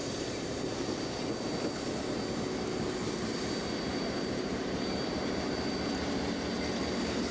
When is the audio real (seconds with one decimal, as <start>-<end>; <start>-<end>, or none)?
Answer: 0.8-3.9; 5.5-7.3